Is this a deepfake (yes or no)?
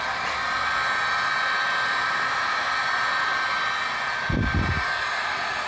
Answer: no